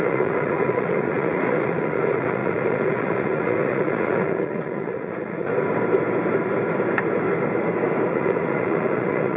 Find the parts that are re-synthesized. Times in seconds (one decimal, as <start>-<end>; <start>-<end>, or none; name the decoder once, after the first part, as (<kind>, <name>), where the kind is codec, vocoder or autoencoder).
0.0-5.5 (vocoder, Vocos); 8.1-9.4